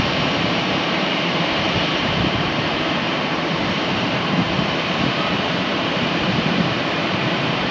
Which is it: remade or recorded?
remade